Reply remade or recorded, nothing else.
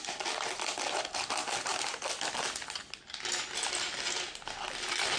recorded